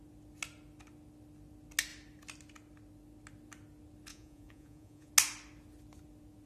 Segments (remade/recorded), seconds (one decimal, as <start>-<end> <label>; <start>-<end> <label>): 0.0-4.1 recorded; 4.1-5.1 remade; 5.1-6.5 recorded